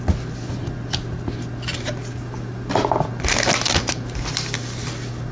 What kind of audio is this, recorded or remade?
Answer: recorded